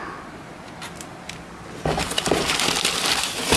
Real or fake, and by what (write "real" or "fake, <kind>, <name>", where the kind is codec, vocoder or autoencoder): real